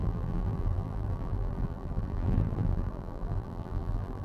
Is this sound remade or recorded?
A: remade